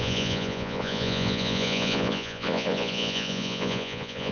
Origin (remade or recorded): remade